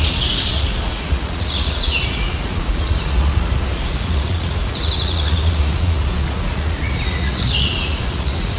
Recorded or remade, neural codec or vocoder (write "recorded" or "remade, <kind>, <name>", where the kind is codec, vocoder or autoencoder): remade, vocoder, Vocos